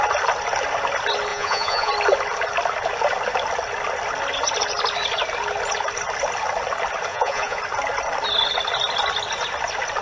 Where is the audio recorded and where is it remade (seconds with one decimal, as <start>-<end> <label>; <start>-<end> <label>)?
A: 0.0-1.3 recorded; 1.3-1.9 remade; 1.9-7.1 recorded; 7.1-7.6 remade; 7.6-10.0 recorded